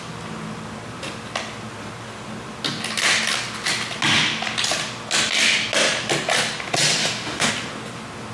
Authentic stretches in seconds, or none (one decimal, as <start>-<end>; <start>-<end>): 0.0-7.0; 7.5-8.3